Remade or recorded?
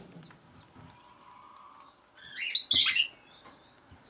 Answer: recorded